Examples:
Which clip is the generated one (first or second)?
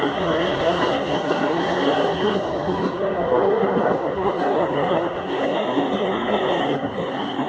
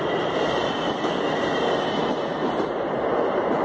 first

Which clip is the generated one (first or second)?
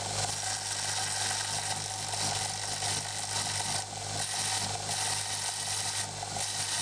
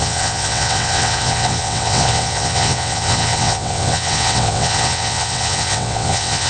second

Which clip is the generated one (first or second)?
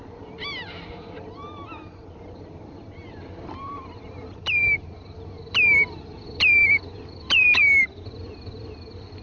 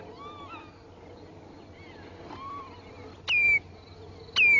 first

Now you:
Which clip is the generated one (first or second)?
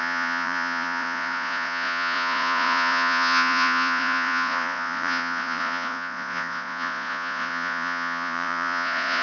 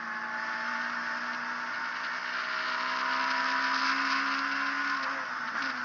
first